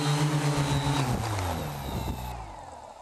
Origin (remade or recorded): recorded